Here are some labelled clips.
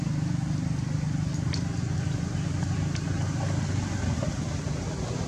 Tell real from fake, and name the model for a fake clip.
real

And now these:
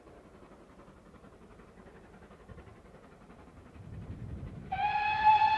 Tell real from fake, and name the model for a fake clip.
fake, vocoder, BigVGAN v2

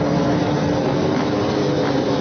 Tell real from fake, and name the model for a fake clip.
real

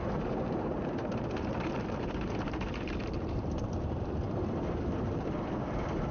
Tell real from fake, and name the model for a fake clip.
fake, vocoder, BigVGAN v2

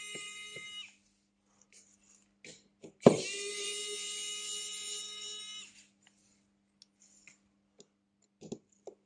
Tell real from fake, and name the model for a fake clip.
real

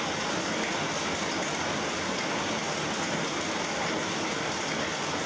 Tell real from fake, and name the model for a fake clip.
real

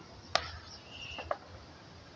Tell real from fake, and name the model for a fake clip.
real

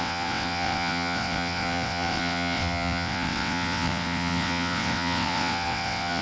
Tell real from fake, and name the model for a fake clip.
fake, vocoder, WaveNeXt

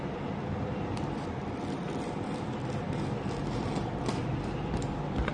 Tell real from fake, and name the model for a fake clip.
fake, vocoder, BigVGAN v2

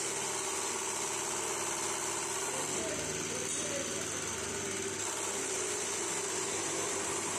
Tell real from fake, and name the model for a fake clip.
real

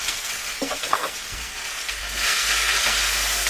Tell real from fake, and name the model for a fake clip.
fake, codec, SNAC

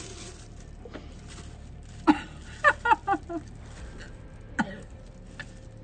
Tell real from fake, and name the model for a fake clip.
real